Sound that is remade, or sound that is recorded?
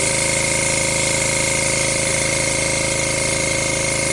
recorded